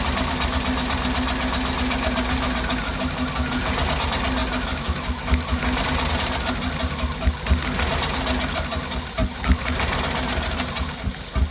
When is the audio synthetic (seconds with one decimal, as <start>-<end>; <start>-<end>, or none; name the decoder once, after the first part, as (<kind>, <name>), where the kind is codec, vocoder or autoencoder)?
none